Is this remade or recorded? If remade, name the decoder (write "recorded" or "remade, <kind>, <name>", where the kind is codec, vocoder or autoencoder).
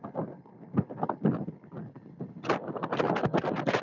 recorded